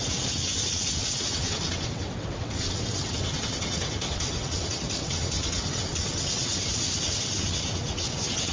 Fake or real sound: fake